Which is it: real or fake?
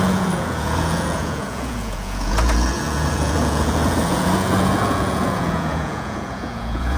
fake